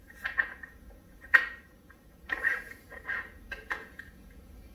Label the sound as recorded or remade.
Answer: remade